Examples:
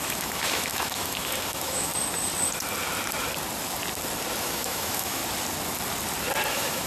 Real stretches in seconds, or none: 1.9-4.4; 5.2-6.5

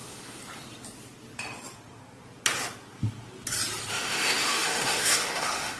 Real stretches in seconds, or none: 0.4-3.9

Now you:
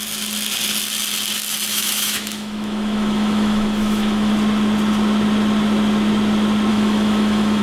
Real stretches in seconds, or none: 0.0-1.7; 4.3-6.7

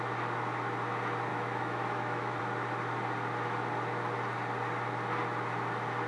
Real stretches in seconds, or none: 0.0-1.3; 2.4-6.1

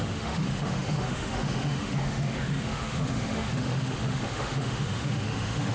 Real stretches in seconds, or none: none

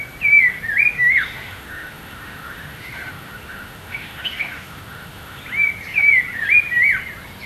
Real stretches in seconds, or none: 0.0-0.9; 5.4-7.5